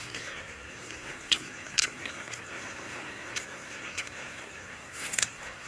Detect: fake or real fake